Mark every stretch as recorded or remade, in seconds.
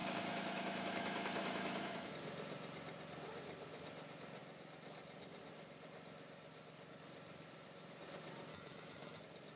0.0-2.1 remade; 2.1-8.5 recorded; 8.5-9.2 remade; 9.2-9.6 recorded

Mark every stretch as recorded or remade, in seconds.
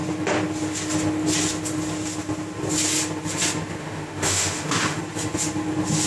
0.0-3.8 recorded; 3.8-5.0 remade; 5.0-6.1 recorded